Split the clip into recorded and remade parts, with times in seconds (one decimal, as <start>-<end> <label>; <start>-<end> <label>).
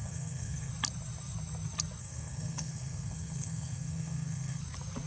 0.0-0.7 remade; 0.7-2.0 recorded; 2.0-4.6 remade; 4.6-5.1 recorded